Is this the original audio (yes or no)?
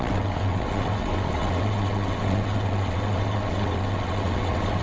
no